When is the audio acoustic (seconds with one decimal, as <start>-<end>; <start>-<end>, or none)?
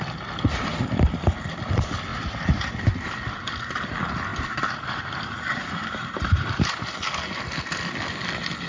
0.0-2.1; 2.7-4.3; 7.0-8.7